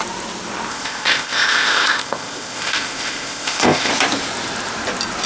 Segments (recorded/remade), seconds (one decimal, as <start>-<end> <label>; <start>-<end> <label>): 0.0-0.7 recorded; 0.7-3.9 remade; 3.9-5.3 recorded